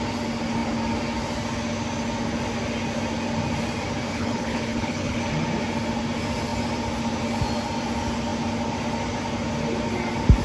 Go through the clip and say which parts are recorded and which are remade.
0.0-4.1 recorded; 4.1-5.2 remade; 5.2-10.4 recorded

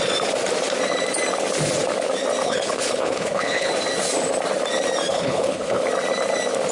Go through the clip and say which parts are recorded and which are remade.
0.0-2.4 recorded; 2.4-3.7 remade; 3.7-5.1 recorded; 5.1-5.8 remade; 5.8-6.7 recorded

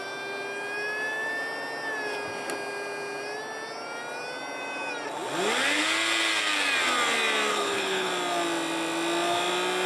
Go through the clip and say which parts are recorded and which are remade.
0.0-7.5 recorded; 7.5-8.1 remade; 8.1-9.9 recorded